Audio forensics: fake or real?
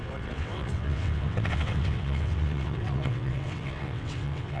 fake